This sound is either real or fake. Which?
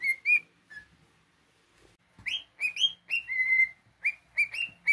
real